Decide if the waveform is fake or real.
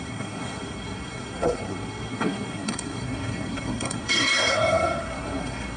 fake